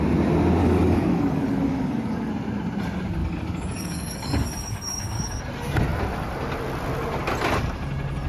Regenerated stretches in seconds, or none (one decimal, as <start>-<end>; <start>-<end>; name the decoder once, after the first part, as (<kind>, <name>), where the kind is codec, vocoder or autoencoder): 0.6-2.3 (codec, DAC); 3.2-5.4